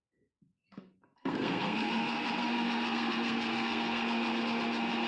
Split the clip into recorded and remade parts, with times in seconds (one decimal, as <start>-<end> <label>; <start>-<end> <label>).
0.0-5.1 remade